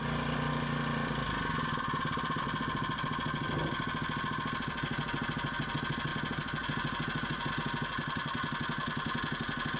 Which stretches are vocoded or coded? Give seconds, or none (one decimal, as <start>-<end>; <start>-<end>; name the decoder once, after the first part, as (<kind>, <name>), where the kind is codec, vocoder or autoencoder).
none